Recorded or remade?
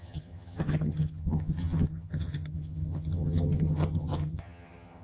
remade